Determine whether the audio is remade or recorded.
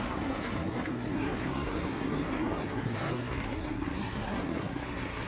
remade